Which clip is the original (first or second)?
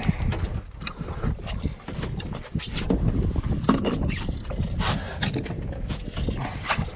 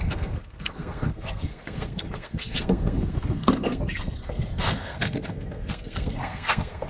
first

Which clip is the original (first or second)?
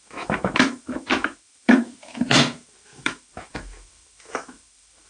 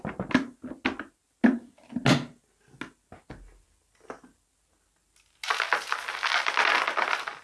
second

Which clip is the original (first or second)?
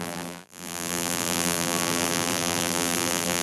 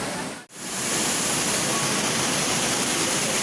second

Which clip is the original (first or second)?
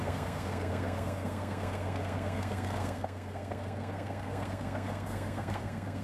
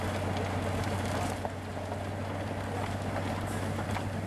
second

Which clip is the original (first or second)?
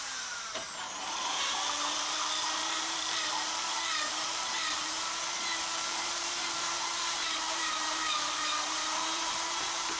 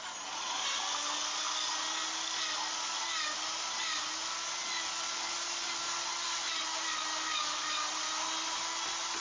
second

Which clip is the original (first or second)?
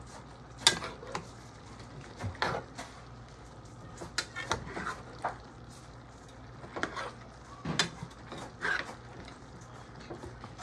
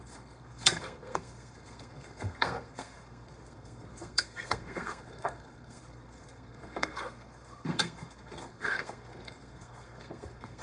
first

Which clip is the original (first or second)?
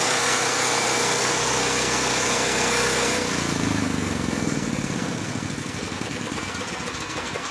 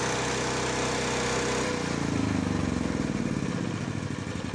second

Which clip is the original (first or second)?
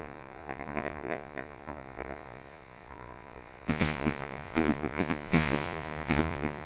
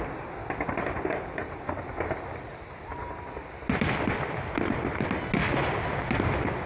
second